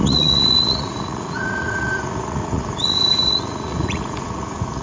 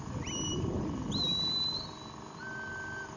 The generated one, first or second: first